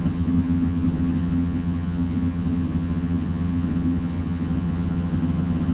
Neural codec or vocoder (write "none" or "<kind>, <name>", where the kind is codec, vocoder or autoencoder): vocoder, HiFi-GAN